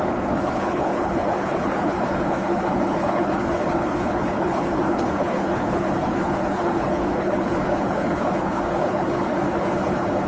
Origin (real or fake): fake